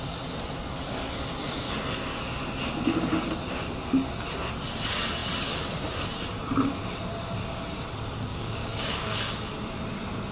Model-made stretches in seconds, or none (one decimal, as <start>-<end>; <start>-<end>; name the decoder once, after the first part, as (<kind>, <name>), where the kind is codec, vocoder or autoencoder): 8.3-9.2 (codec, DAC)